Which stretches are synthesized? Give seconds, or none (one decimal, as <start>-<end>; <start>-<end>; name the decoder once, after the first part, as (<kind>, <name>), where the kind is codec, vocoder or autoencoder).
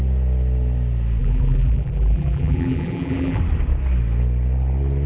1.2-3.4 (vocoder, BigVGAN v2)